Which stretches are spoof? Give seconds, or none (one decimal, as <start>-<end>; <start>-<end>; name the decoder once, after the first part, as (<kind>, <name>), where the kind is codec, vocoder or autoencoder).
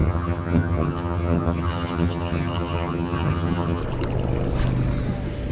0.0-3.8 (vocoder, HiFi-GAN)